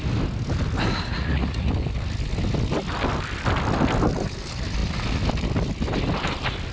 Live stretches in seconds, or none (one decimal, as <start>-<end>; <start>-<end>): 0.0-1.1; 1.7-6.7